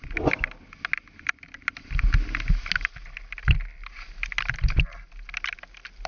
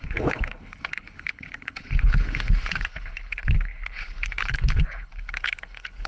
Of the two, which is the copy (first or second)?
second